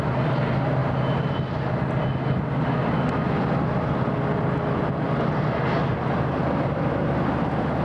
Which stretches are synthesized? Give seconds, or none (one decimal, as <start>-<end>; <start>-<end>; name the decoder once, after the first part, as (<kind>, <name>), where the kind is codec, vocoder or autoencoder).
none